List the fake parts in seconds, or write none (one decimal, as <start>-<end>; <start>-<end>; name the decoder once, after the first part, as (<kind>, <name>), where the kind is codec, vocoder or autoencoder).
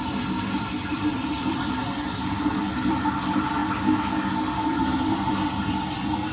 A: 0.0-1.8 (vocoder, BigVGAN v2); 2.9-3.6; 4.7-6.3